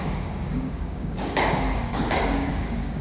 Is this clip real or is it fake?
fake